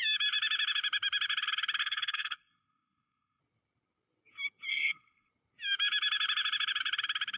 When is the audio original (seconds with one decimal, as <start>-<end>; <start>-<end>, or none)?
0.0-1.8; 3.4-4.7; 5.3-7.4